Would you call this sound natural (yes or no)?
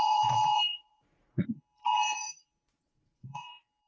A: no